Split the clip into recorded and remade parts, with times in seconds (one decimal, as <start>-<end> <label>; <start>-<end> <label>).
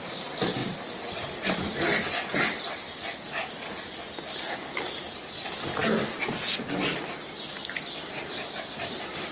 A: 0.0-0.6 recorded; 0.6-2.4 remade; 2.4-9.3 recorded